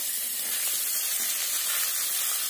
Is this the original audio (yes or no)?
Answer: yes